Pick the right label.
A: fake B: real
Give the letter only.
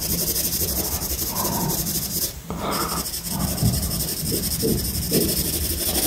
A